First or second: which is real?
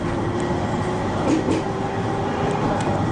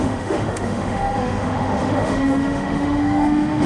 first